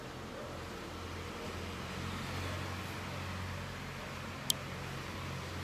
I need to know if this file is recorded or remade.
recorded